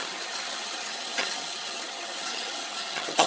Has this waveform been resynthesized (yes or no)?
yes